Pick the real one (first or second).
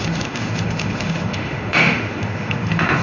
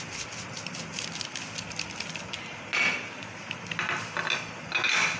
second